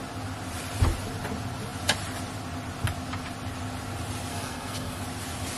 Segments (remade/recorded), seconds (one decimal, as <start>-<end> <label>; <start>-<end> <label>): 0.0-4.3 recorded; 4.3-5.0 remade; 5.0-5.6 recorded